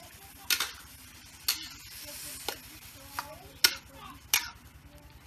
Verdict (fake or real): real